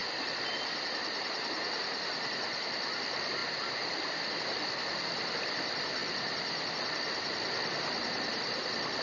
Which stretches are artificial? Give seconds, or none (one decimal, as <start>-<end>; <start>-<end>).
none